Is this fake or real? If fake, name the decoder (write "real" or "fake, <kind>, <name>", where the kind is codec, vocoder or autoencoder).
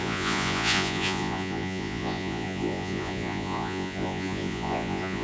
fake, vocoder, Vocos